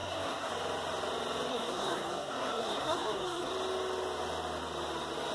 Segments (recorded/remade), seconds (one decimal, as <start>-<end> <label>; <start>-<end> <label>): 0.0-0.5 remade; 0.5-1.5 recorded; 1.5-3.5 remade; 3.5-5.3 recorded